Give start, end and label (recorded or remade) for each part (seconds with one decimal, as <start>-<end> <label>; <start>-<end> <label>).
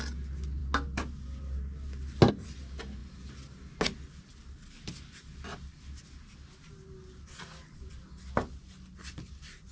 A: 0.0-9.7 recorded